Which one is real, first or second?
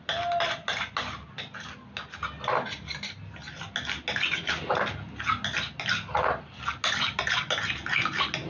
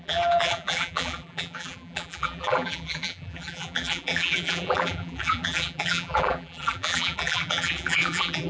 first